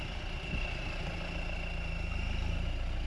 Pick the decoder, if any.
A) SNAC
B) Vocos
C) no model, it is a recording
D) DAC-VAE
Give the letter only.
C